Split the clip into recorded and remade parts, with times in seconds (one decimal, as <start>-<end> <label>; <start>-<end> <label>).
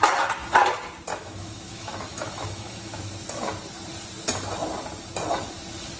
0.0-1.1 recorded; 1.1-3.0 remade; 3.0-6.0 recorded